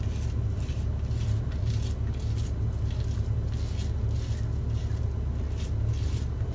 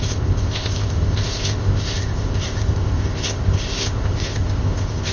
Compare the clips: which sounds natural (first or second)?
first